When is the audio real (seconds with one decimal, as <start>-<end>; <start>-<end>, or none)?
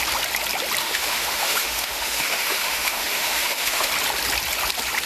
0.0-0.8; 3.9-5.1